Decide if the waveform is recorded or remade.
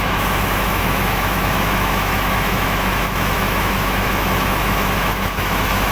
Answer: remade